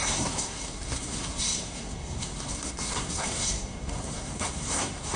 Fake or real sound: fake